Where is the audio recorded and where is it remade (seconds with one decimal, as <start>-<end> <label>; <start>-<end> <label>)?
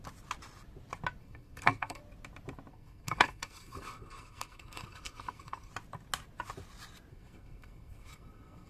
0.0-1.2 recorded; 1.2-2.0 remade; 2.0-2.7 recorded; 2.7-5.7 remade; 5.7-7.1 recorded; 7.1-8.7 remade